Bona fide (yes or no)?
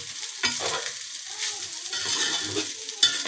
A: yes